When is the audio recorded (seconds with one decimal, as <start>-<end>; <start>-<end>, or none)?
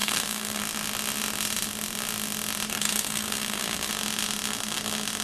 0.6-2.7; 3.9-5.2